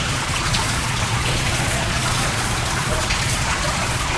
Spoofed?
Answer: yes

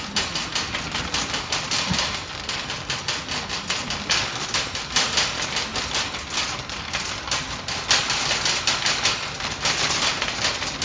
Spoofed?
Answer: no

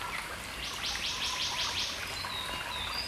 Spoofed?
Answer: no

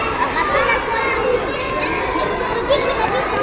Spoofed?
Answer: no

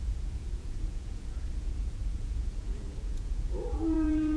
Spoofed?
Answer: yes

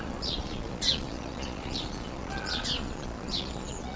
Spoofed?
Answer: yes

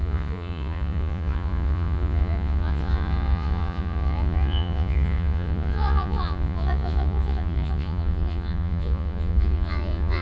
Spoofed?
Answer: yes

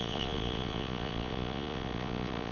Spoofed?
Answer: yes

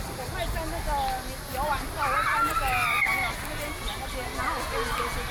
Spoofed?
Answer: no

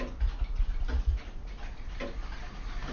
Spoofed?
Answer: no